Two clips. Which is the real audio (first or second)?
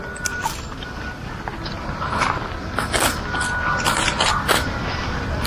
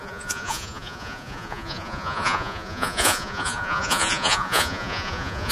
first